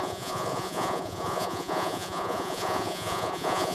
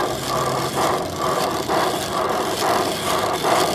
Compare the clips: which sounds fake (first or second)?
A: first